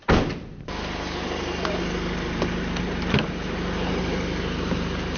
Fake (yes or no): no